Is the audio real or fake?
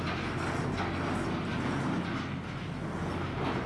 real